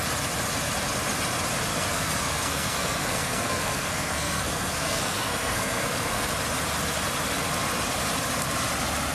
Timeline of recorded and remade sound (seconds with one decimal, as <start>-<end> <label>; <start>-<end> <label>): 0.0-1.7 recorded; 1.7-6.3 remade; 6.3-9.1 recorded